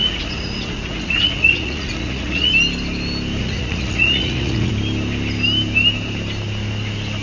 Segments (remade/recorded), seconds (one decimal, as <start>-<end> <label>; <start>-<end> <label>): 0.0-2.5 remade; 2.5-3.4 recorded; 3.4-4.7 remade; 4.7-7.2 recorded